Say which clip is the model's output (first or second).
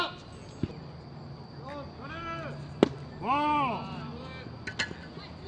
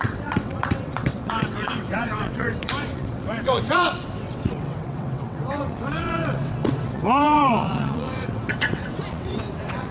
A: second